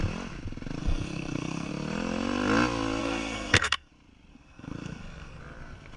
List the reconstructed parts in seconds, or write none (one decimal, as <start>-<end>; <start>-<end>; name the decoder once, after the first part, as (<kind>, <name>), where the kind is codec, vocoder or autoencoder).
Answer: 0.8-1.7 (codec, SNAC); 3.0-3.9; 4.3-5.4